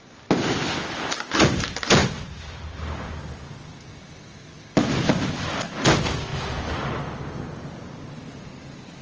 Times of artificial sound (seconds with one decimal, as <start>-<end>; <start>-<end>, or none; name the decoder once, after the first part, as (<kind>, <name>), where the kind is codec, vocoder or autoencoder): 2.0-3.9 (vocoder, BigVGAN v2)